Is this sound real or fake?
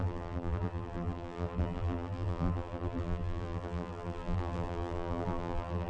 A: fake